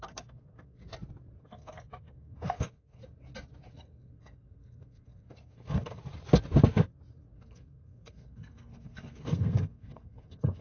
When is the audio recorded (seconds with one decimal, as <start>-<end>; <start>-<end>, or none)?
0.8-1.4; 3.0-3.7; 6.0-7.4